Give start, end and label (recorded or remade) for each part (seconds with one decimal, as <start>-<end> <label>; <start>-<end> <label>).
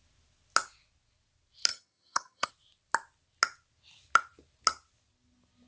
0.0-1.7 recorded; 1.7-2.5 remade; 2.5-5.7 recorded